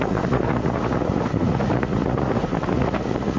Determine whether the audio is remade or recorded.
remade